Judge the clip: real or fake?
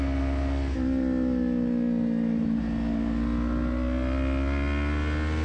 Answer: real